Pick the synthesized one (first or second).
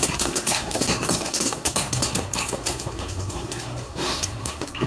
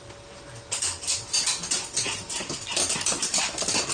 first